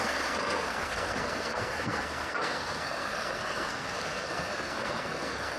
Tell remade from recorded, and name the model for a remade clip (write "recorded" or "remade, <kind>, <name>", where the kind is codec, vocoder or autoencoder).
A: remade, codec, SNAC